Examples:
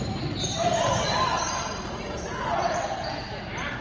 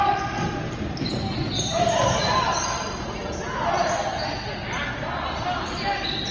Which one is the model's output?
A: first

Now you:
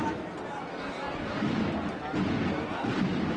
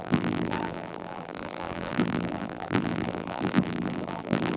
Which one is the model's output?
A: second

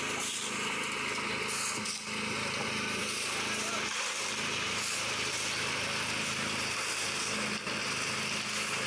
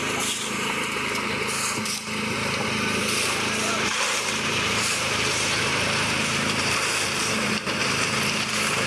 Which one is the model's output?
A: second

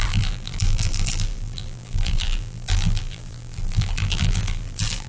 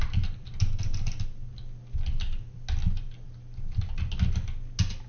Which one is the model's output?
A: first